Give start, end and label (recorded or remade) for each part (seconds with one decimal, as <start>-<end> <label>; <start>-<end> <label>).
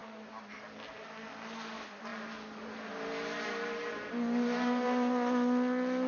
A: 0.0-6.1 recorded